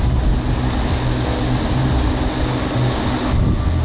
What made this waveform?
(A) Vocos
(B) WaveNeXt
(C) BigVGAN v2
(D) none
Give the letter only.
D